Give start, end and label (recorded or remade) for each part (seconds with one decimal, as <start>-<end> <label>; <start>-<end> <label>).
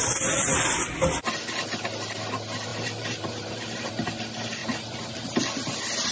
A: 0.0-2.7 recorded; 2.7-3.9 remade; 3.9-4.6 recorded; 4.6-5.4 remade; 5.4-6.1 recorded